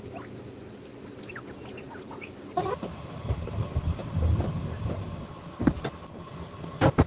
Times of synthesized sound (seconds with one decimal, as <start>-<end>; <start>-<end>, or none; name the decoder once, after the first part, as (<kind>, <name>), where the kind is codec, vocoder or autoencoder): none